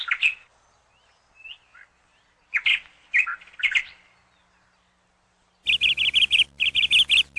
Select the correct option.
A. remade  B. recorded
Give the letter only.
B